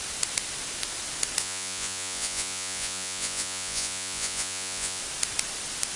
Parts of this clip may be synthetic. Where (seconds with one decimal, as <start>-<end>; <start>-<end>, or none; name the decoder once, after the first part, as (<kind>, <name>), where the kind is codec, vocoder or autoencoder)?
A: 1.4-5.0 (vocoder, Vocos)